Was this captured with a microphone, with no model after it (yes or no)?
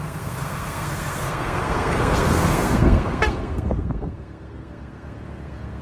no